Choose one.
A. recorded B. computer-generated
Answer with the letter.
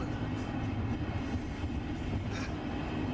A